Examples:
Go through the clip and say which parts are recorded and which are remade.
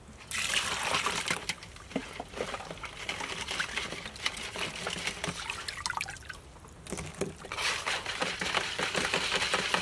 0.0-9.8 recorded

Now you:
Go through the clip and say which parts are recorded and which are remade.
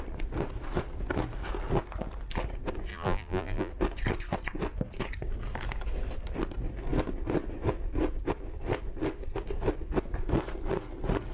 0.0-2.9 recorded; 2.9-3.7 remade; 3.7-11.3 recorded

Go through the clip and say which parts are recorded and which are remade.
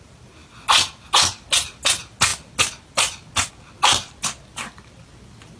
0.0-5.6 recorded